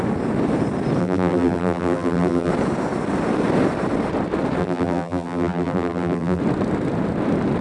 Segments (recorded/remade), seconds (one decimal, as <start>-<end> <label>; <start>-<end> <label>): 0.0-1.0 recorded; 1.0-2.5 remade; 2.5-4.6 recorded; 4.6-6.4 remade; 6.4-7.6 recorded

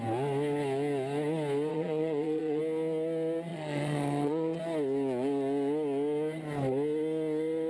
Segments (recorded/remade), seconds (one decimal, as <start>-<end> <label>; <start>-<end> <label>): 0.0-1.7 recorded; 1.7-2.6 remade; 2.6-3.5 recorded; 3.5-4.6 remade; 4.6-7.7 recorded

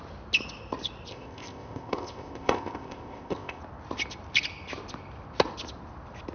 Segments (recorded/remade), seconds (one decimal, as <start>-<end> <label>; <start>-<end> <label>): 0.0-1.1 recorded; 1.1-3.6 remade; 3.6-6.3 recorded